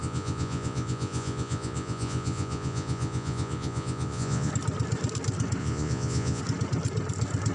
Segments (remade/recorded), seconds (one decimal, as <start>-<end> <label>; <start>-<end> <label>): 0.0-4.5 remade; 4.5-5.6 recorded; 5.6-6.4 remade; 6.4-7.5 recorded